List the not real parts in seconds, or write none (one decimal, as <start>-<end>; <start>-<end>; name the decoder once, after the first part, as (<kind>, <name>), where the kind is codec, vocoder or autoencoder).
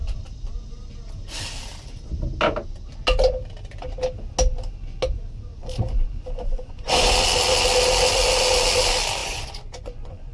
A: 5.5-7.1 (vocoder, Vocos); 9.2-10.3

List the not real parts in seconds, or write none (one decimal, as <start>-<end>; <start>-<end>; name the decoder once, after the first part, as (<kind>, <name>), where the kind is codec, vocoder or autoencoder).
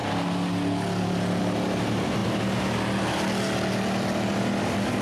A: none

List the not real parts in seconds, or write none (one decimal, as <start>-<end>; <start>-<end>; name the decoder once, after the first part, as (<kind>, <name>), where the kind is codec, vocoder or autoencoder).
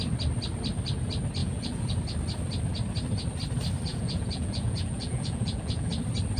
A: 1.4-2.0 (vocoder, Vocos); 3.9-5.9